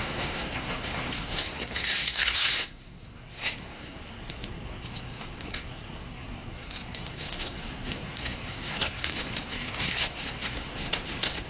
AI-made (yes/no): yes